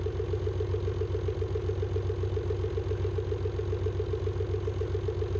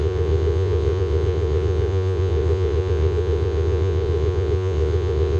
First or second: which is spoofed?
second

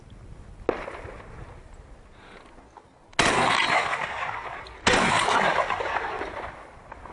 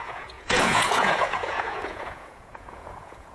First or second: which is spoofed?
second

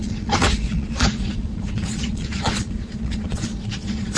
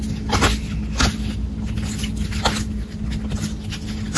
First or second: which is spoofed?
first